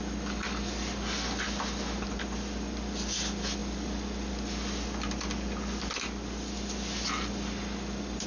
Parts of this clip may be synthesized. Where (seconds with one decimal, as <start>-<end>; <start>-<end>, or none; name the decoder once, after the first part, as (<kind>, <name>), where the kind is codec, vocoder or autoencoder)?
none

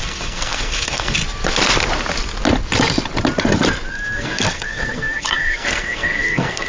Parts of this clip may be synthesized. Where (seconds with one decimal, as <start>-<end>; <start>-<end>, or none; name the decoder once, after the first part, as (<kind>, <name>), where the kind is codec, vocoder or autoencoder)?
0.0-1.2 (codec, SNAC); 3.9-6.7

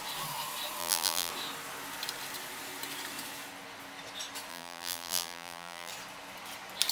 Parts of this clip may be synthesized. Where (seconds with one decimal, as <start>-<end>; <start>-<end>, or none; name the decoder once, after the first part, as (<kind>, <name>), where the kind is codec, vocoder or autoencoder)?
0.8-1.3 (vocoder, BigVGAN v2); 4.5-5.9

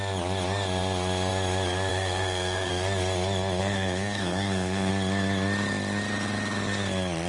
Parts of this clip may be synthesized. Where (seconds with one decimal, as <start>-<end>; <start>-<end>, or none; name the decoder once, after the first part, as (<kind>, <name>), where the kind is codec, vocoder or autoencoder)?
1.9-2.7 (codec, SNAC); 3.6-4.9

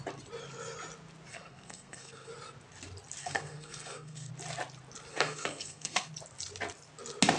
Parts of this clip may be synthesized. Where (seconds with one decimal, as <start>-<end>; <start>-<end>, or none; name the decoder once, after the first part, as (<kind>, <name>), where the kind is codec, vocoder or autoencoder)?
1.3-2.3 (codec, SNAC); 3.2-4.3; 5.1-6.1

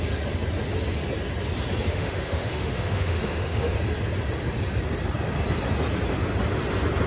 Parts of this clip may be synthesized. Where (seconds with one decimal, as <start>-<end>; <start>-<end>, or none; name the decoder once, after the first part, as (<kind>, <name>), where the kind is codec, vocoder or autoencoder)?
1.9-3.7 (autoencoder, DAC-VAE)

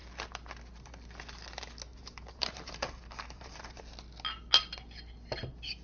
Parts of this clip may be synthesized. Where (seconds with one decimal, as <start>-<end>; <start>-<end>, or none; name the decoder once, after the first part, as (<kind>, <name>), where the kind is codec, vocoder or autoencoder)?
1.9-3.8 (vocoder, BigVGAN v2)